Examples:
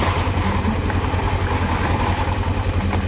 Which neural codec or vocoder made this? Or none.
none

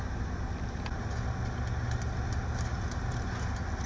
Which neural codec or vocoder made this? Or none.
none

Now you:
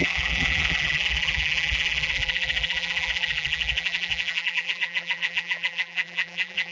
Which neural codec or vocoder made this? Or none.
vocoder, BigVGAN v2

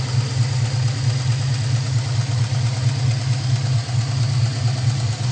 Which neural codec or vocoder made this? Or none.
none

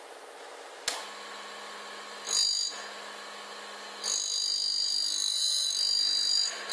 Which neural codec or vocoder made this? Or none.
none